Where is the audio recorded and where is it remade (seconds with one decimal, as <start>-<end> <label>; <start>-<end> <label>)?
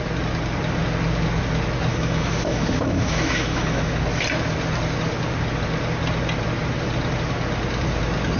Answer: 0.0-1.9 recorded; 1.9-3.9 remade; 3.9-8.4 recorded